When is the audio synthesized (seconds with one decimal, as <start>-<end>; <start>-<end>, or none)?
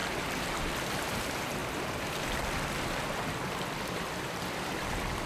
1.0-5.3